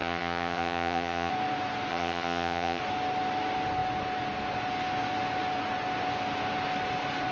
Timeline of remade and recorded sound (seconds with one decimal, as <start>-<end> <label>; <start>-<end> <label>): 0.0-1.3 remade; 1.3-1.9 recorded; 1.9-2.8 remade; 2.8-7.3 recorded